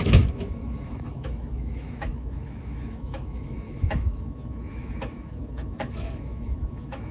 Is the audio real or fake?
fake